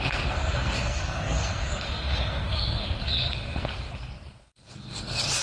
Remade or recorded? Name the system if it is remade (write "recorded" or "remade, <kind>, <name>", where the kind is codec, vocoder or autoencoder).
remade, codec, SNAC